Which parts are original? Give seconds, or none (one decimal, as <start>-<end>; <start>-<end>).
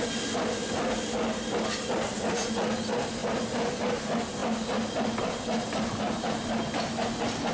0.0-7.5